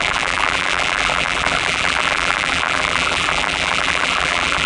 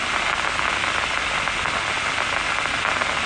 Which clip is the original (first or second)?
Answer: second